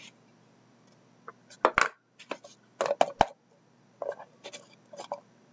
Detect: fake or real real